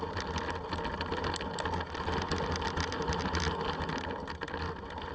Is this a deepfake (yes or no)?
no